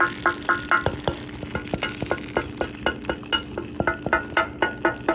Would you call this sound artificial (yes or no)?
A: no